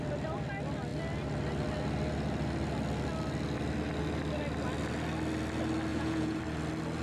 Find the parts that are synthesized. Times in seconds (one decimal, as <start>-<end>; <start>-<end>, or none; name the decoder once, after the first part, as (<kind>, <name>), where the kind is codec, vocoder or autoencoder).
5.9-6.4 (vocoder, Vocos)